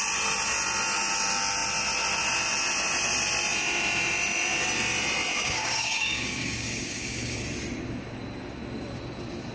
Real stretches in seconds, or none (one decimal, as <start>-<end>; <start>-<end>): 0.0-5.3; 7.4-9.5